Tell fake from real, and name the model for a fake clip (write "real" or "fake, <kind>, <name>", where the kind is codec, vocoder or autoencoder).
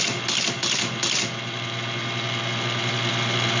real